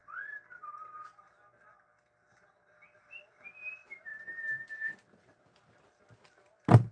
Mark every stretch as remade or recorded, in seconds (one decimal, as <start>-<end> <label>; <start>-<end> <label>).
0.0-6.9 recorded